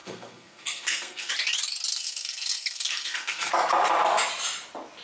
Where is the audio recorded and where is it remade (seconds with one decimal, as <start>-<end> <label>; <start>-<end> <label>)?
0.0-1.3 remade; 1.3-1.9 recorded; 1.9-3.5 remade; 3.5-5.0 recorded